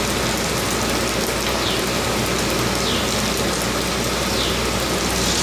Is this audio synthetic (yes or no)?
no